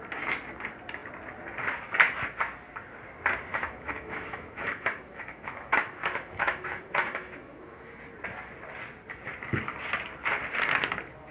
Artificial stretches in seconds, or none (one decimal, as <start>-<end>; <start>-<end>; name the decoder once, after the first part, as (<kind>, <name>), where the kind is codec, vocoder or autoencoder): 3.5-8.0 (autoencoder, DAC-VAE)